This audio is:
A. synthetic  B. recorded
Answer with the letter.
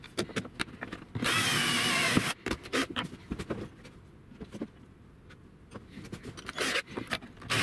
B